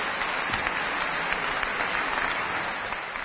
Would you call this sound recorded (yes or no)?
yes